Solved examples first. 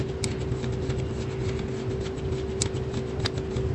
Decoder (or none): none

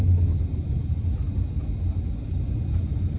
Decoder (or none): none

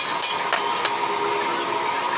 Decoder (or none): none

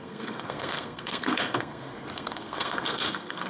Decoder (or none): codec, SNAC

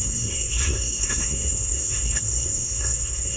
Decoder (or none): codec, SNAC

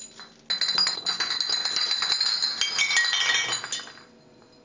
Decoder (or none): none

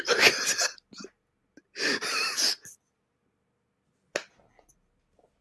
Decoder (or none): none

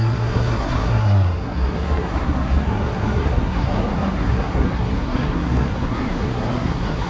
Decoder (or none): codec, SNAC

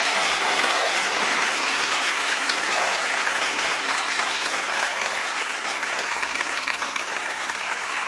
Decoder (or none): codec, SNAC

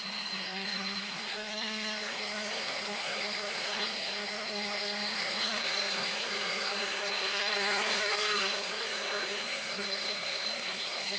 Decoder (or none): codec, SNAC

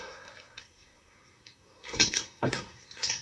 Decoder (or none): codec, SNAC